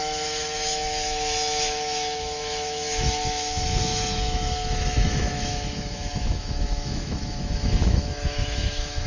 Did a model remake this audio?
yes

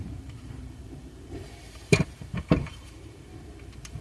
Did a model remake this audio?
yes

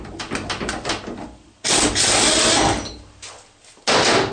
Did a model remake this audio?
no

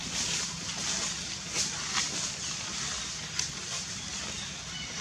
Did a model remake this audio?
no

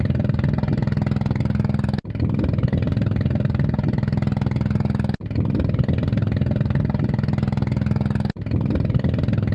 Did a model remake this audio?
no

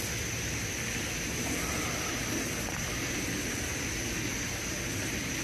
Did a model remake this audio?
no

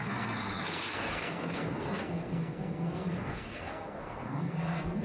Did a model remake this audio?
yes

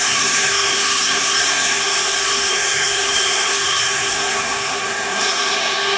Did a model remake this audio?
yes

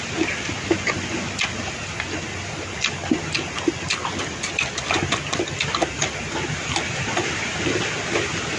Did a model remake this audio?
no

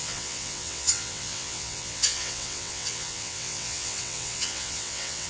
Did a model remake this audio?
yes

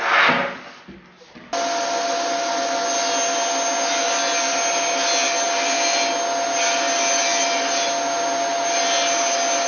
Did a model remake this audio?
no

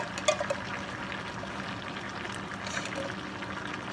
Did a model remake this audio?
no